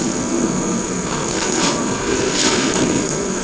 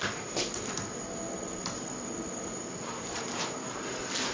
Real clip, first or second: second